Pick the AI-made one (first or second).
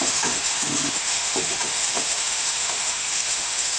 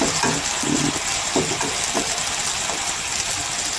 first